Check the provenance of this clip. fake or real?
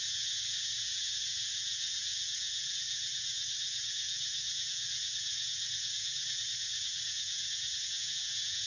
fake